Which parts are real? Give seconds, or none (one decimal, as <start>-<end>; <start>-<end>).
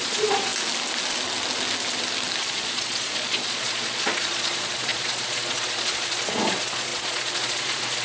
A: 0.5-2.4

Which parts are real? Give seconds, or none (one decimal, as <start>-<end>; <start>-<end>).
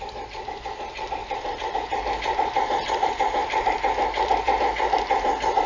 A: 0.0-1.2; 4.6-5.7